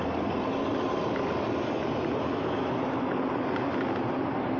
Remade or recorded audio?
recorded